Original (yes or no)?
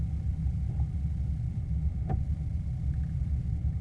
no